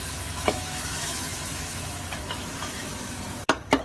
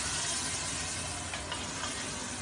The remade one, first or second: first